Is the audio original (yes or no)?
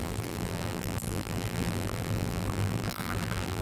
no